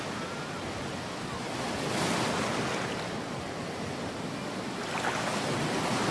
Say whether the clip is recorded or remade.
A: recorded